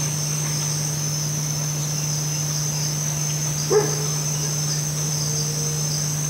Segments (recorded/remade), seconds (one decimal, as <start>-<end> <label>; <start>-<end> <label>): 0.0-6.3 recorded